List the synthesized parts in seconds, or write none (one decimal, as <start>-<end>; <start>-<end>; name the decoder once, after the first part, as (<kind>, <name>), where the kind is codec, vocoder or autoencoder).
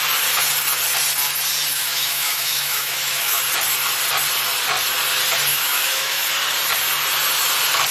1.7-3.4 (autoencoder, DAC-VAE); 5.5-6.3